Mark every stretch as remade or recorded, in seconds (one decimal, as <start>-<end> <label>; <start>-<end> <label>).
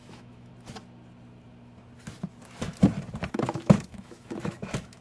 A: 0.0-0.5 remade; 0.5-3.3 recorded; 3.3-5.0 remade